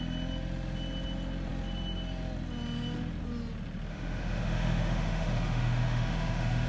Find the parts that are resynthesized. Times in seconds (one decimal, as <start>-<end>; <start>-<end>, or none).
3.9-6.7